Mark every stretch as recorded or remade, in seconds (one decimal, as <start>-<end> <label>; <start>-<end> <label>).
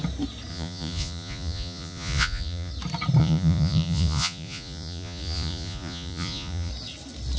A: 0.0-0.5 recorded; 0.5-2.7 remade; 2.7-3.2 recorded; 3.2-6.7 remade; 6.7-7.4 recorded